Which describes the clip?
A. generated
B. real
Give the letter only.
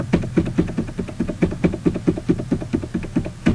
B